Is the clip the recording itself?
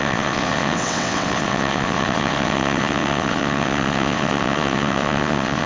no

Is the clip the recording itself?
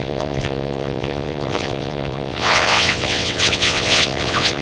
no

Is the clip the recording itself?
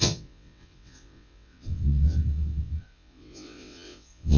no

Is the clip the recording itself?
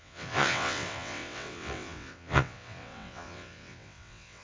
no